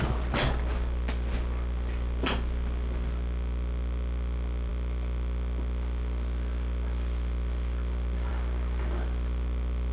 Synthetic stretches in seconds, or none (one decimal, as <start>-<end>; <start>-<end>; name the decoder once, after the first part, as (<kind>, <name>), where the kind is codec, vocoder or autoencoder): none

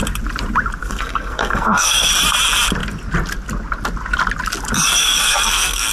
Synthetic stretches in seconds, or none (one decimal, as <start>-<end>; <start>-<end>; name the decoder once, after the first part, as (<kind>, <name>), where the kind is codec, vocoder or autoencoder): 0.8-2.1 (codec, SNAC); 5.0-5.9

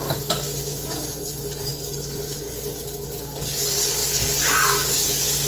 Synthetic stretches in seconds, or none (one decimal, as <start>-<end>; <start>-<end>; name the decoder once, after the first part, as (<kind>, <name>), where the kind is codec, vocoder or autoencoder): 0.0-5.5 (codec, DAC)

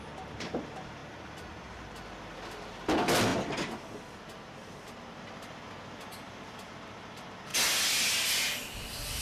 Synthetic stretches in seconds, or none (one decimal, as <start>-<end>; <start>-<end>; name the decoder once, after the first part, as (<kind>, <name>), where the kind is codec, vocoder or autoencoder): none

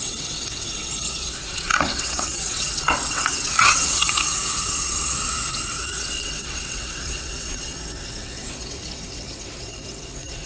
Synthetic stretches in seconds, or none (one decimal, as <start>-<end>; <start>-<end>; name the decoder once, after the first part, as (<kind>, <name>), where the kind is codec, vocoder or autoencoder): 0.0-10.5 (vocoder, WaveNeXt)